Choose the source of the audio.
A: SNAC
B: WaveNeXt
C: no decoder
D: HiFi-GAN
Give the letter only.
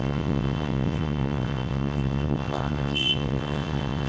B